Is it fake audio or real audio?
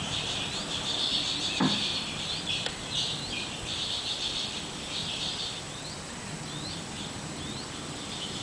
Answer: fake